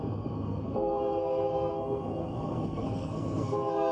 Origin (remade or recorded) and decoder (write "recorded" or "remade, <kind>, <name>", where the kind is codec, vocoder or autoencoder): remade, codec, SNAC